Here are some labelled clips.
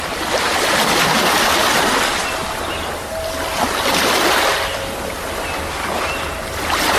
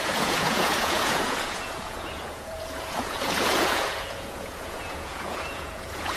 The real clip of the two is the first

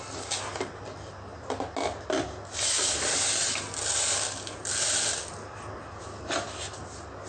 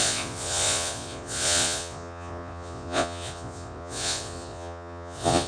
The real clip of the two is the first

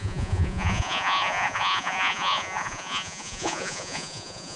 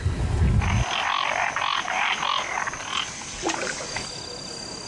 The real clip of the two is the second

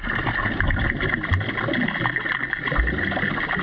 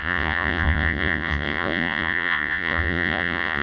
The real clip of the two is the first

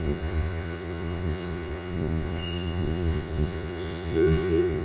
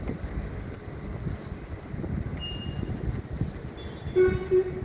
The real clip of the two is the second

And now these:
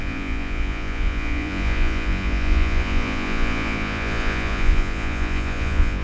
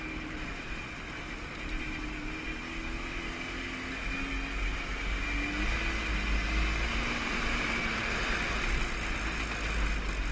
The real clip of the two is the second